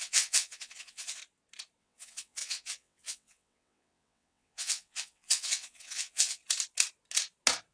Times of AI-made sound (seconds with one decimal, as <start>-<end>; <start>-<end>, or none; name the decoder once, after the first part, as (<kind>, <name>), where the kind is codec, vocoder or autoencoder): 0.0-1.2 (vocoder, WaveNeXt); 1.8-6.4